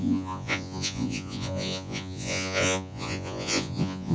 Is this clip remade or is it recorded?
remade